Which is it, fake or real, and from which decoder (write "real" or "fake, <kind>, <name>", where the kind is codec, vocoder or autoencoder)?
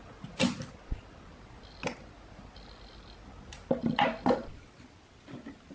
real